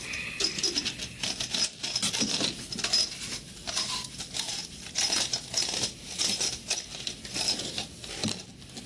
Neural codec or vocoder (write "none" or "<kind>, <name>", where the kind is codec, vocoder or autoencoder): none